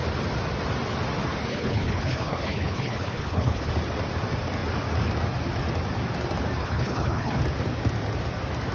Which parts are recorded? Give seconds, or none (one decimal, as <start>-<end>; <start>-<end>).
0.0-1.5; 3.7-6.6; 7.4-8.7